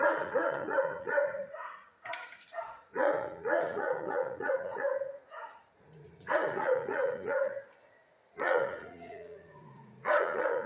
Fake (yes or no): yes